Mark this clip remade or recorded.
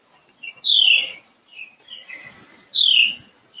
recorded